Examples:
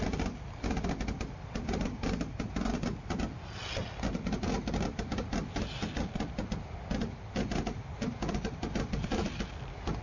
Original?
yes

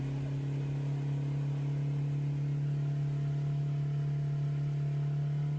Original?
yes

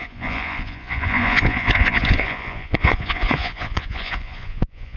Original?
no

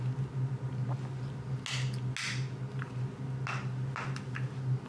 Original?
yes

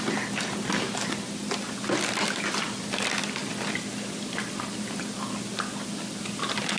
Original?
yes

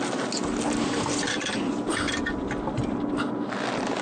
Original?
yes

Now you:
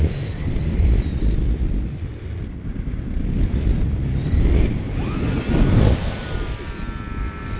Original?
yes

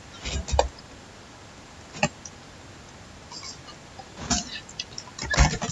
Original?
yes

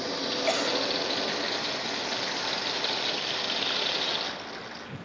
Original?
yes